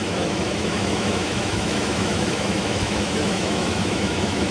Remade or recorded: remade